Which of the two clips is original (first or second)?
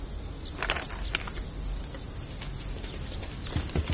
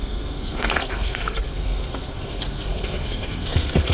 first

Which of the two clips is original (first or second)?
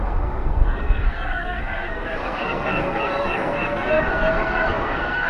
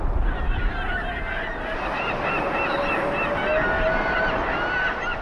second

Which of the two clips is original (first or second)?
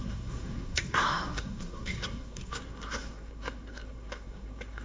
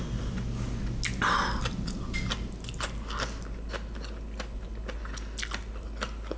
second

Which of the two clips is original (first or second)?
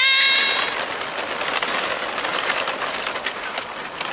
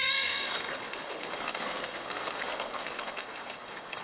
first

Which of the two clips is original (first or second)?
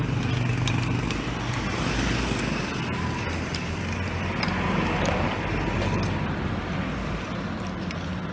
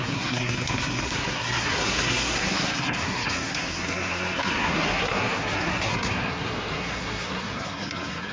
first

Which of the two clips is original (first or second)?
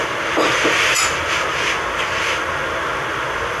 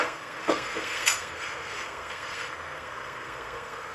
first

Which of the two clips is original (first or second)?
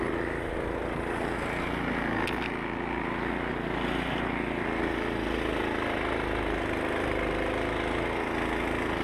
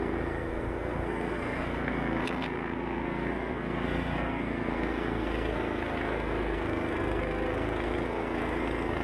first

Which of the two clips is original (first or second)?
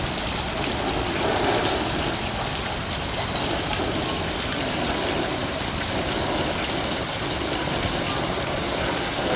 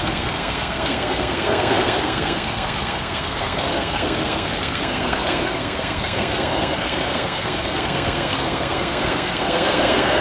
first